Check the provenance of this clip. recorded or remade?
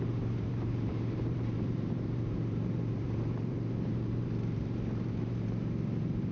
remade